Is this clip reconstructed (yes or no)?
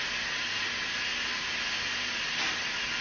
no